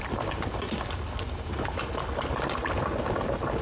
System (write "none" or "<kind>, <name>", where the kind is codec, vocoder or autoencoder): none